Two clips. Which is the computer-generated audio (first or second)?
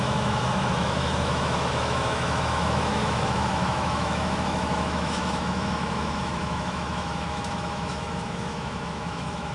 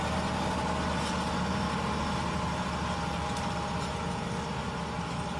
first